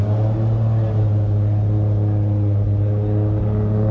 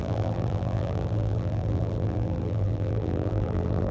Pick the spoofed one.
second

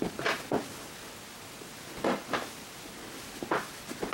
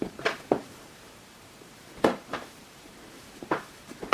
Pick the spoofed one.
second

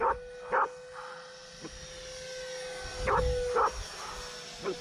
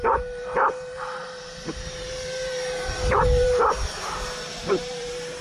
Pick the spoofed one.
second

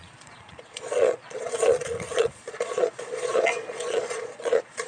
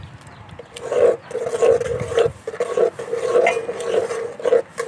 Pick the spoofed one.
first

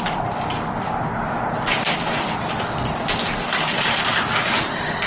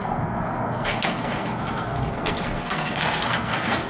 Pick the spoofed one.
second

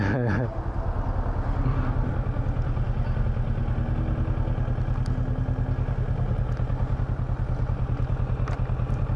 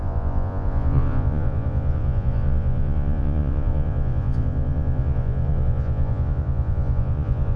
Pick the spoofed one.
second